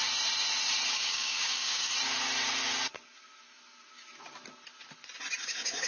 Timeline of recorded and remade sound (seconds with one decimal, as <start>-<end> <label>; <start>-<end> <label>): 0.0-0.9 recorded; 0.9-1.9 remade; 1.9-5.4 recorded; 5.4-5.9 remade